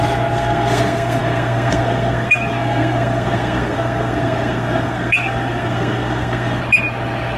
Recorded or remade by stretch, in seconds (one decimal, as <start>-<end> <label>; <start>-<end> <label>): 0.0-6.6 remade; 6.6-7.4 recorded